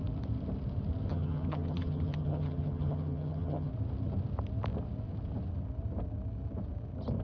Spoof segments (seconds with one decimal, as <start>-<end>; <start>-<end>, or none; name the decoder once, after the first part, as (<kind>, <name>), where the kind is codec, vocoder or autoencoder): 1.1-3.7 (vocoder, HiFi-GAN)